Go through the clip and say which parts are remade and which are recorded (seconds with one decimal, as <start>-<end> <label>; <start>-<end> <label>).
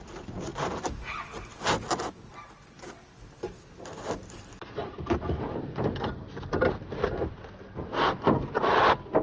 0.0-9.2 recorded